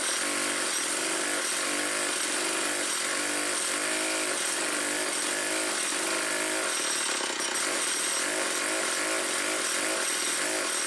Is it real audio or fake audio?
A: real